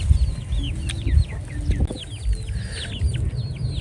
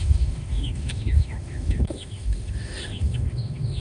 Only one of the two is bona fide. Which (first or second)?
first